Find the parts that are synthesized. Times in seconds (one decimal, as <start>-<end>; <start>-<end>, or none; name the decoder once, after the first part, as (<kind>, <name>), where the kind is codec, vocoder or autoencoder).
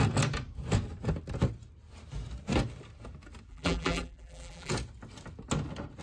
3.5-4.7 (vocoder, BigVGAN v2)